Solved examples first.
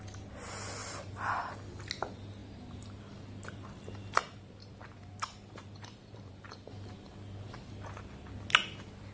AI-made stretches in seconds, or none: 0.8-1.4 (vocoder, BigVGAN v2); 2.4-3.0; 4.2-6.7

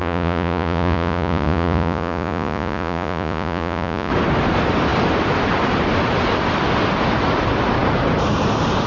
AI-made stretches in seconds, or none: 0.0-4.1 (vocoder, Vocos)

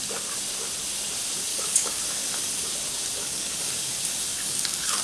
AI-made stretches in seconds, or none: 1.5-2.0 (codec, DAC); 3.2-3.9; 4.3-5.0

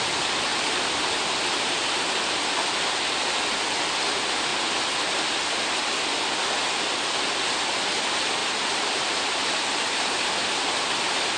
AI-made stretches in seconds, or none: 0.5-2.2 (vocoder, BigVGAN v2); 8.4-10.3

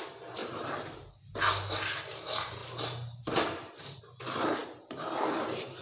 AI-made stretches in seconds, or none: 0.4-1.1 (vocoder, BigVGAN v2); 2.6-4.0; 4.6-5.8

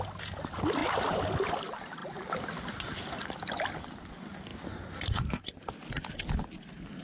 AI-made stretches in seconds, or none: 0.8-1.5 (vocoder, BigVGAN v2); 4.5-6.1

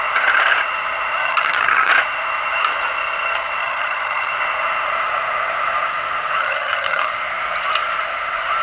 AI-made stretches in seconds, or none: 1.2-1.9 (vocoder, HiFi-GAN); 3.6-4.3; 6.4-7.1